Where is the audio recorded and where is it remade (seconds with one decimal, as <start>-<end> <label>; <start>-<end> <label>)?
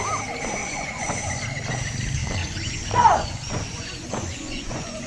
0.0-0.6 recorded; 0.6-1.4 remade; 1.4-2.4 recorded; 2.4-5.1 remade